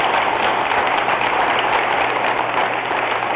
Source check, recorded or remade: recorded